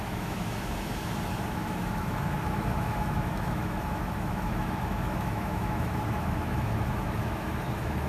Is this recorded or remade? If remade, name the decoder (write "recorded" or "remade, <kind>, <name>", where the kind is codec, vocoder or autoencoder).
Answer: remade, autoencoder, DAC-VAE